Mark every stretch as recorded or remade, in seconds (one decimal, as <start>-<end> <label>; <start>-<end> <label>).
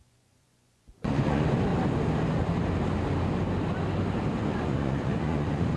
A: 0.0-1.7 remade; 1.7-4.4 recorded; 4.4-5.8 remade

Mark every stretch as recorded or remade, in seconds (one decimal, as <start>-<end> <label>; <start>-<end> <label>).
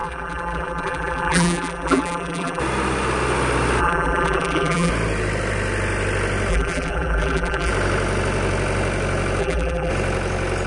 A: 0.0-2.6 remade; 2.6-3.8 recorded; 3.8-4.9 remade; 4.9-6.5 recorded; 6.5-7.7 remade; 7.7-9.4 recorded; 9.4-9.9 remade; 9.9-10.7 recorded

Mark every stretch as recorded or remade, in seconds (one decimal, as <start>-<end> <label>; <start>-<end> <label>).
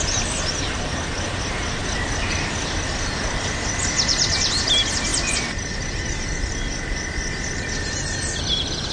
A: 0.0-8.9 recorded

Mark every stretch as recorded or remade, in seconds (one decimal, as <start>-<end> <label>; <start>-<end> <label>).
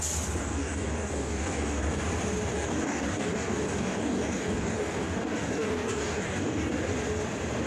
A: 0.0-0.4 recorded; 0.4-2.0 remade; 2.0-2.5 recorded; 2.5-6.7 remade; 6.7-7.7 recorded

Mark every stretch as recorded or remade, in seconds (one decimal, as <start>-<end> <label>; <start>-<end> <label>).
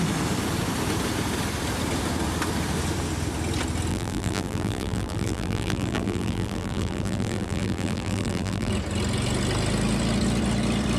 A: 0.0-3.9 recorded; 3.9-8.7 remade; 8.7-11.0 recorded